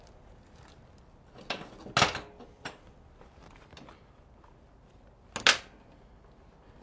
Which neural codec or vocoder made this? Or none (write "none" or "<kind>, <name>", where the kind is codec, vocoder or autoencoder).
none